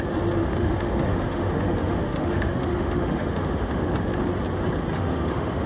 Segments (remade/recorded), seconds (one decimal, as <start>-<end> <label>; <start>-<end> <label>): 0.0-0.4 recorded; 0.4-3.8 remade; 3.8-4.9 recorded; 4.9-5.7 remade

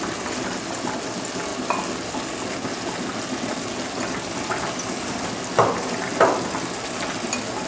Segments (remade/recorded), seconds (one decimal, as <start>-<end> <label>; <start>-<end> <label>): 0.0-7.7 recorded

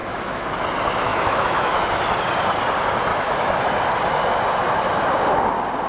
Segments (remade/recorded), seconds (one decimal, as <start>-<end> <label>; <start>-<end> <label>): 0.0-0.6 remade; 0.6-1.1 recorded; 1.1-2.0 remade; 2.0-3.1 recorded; 3.1-3.6 remade; 3.6-5.9 recorded

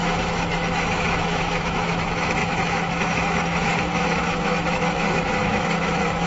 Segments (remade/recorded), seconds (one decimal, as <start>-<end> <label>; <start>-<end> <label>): 0.0-6.3 remade

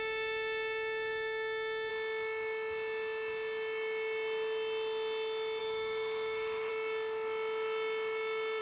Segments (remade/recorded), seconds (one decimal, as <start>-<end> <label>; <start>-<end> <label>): 0.0-1.9 remade; 1.9-5.6 recorded; 5.6-6.7 remade; 6.7-8.6 recorded

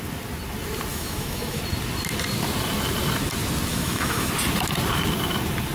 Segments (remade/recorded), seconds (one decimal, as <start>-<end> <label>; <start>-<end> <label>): 0.0-0.9 recorded; 0.9-1.6 remade; 1.6-3.7 recorded; 3.7-4.3 remade; 4.3-5.7 recorded

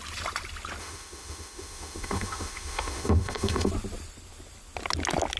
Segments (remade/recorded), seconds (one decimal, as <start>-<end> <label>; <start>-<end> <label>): 0.0-0.8 recorded; 0.8-3.7 remade; 3.7-5.4 recorded